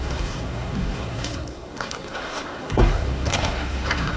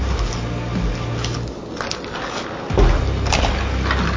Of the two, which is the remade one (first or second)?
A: first